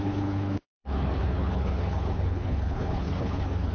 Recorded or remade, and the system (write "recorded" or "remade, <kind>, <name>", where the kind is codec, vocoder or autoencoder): remade, codec, HILCodec